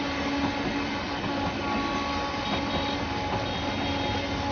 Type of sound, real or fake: real